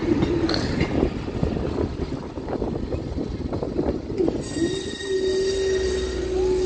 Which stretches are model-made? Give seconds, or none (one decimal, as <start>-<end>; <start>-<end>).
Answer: 0.0-2.1